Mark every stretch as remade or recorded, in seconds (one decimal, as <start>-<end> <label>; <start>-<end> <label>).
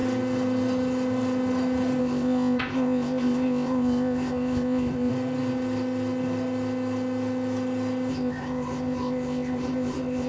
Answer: 0.0-2.0 recorded; 2.0-5.1 remade; 5.1-8.1 recorded; 8.1-10.3 remade